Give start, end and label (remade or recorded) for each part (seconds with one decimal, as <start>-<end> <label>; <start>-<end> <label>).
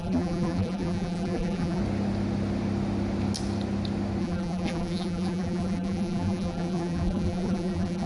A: 0.0-1.8 remade; 1.8-4.2 recorded; 4.2-8.1 remade